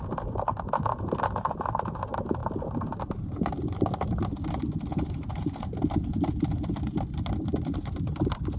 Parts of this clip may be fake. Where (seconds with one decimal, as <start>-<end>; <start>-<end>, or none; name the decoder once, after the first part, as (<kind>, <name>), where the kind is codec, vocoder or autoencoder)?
4.9-5.7 (vocoder, Vocos)